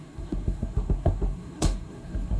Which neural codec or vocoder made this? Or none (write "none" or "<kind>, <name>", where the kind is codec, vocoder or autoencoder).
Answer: codec, SNAC